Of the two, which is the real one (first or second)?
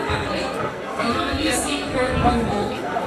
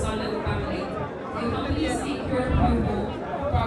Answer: second